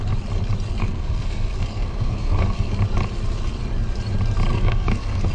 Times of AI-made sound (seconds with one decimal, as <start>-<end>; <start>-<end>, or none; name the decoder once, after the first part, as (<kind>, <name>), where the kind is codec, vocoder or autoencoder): 0.8-2.7 (codec, SNAC); 4.5-5.3